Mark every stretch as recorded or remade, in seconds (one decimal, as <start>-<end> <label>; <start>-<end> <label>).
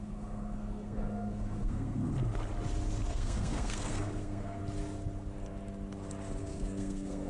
0.0-2.0 remade; 2.0-3.1 recorded; 3.1-4.6 remade; 4.6-6.4 recorded; 6.4-7.3 remade